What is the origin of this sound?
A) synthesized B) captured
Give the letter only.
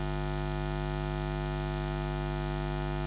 B